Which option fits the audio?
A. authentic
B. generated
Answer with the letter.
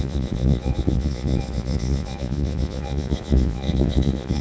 B